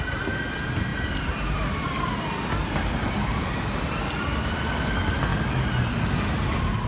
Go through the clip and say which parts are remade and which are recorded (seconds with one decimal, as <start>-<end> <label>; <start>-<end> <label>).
0.0-0.9 recorded; 0.9-2.1 remade; 2.1-2.6 recorded; 2.6-4.1 remade; 4.1-6.9 recorded